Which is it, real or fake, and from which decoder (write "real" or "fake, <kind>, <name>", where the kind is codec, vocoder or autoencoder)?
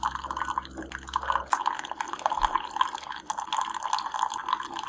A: real